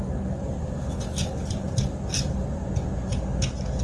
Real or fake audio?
real